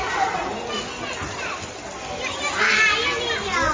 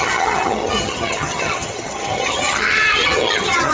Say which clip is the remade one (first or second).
second